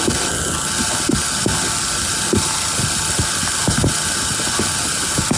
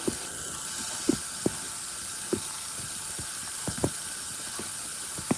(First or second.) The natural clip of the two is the first